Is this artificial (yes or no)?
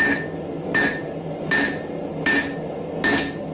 no